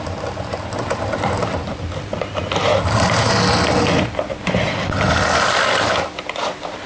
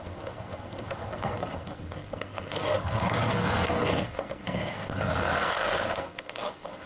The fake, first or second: second